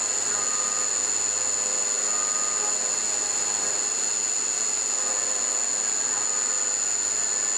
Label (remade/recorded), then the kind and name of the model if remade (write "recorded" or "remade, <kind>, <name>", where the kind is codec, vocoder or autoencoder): recorded